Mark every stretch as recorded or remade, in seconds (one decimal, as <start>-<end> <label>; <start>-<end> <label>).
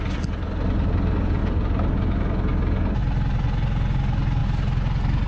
0.0-5.3 recorded